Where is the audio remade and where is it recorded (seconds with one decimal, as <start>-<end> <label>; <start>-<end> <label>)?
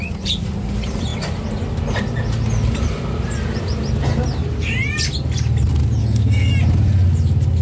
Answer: 0.0-6.0 recorded; 6.0-6.5 remade; 6.5-7.6 recorded